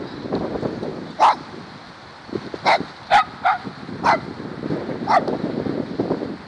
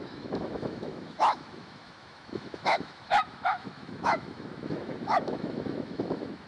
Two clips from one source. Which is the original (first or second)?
first